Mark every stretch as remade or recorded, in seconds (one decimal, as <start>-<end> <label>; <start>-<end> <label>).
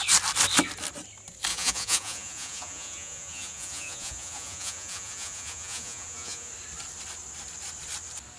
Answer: 0.0-1.5 recorded; 1.5-6.5 remade; 6.5-8.4 recorded